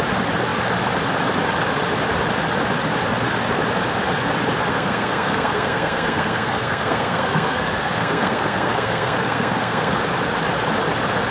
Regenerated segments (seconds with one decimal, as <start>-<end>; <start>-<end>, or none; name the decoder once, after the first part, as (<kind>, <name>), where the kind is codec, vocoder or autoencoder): 4.7-9.9 (codec, SNAC)